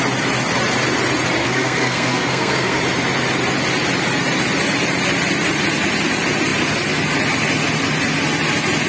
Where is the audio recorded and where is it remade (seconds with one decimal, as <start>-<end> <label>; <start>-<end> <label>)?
0.0-1.4 recorded; 1.4-2.8 remade; 2.8-8.9 recorded